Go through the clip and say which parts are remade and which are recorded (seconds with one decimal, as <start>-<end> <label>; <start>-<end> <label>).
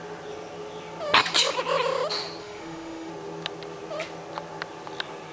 0.0-2.4 recorded; 2.4-3.1 remade; 3.1-5.3 recorded